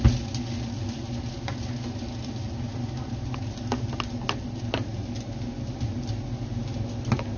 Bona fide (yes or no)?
yes